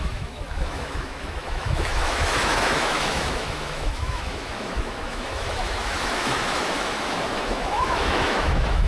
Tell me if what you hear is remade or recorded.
remade